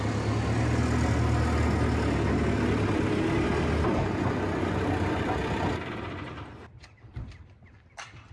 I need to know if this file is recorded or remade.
recorded